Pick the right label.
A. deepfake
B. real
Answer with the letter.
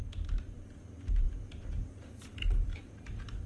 A